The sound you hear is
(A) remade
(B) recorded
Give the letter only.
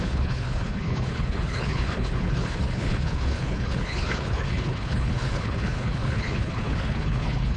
A